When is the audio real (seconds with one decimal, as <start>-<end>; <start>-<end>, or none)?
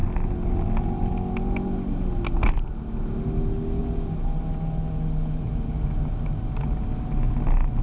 0.0-7.8